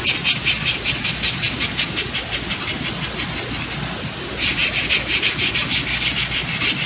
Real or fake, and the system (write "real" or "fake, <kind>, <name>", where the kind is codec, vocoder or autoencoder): real